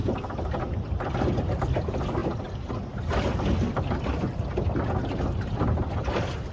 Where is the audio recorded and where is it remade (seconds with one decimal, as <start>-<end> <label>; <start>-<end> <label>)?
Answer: 0.0-6.5 recorded

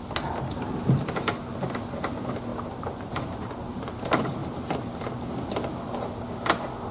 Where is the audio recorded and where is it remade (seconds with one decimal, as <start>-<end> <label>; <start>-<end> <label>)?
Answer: 0.0-6.9 recorded